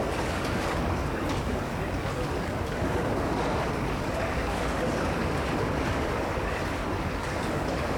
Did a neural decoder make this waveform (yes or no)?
yes